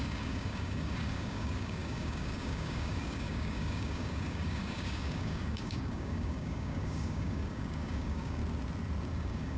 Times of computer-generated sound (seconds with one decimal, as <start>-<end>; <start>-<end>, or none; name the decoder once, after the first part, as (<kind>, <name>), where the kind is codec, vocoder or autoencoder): 0.0-8.4 (codec, DAC); 9.1-9.6